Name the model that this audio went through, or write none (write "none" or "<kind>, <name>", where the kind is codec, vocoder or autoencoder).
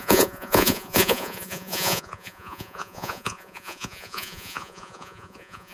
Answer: vocoder, Vocos